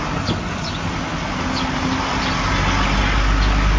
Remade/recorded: recorded